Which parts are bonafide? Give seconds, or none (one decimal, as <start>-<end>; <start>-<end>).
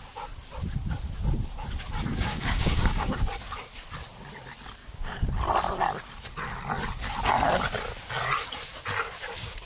0.0-2.1; 3.1-4.8; 5.3-9.7